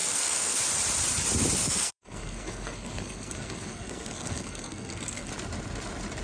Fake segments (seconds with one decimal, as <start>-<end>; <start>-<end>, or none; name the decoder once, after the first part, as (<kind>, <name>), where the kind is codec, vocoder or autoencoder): 0.0-0.6 (codec, SNAC); 1.6-5.3